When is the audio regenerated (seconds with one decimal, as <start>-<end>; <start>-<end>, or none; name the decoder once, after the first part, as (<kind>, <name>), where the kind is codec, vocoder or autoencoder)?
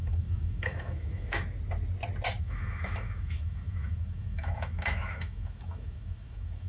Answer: 0.0-1.4 (autoencoder, DAC-VAE); 2.4-6.7